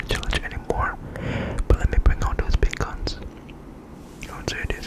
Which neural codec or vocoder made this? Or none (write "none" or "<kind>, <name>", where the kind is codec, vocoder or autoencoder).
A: none